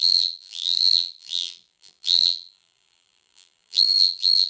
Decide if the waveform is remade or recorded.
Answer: remade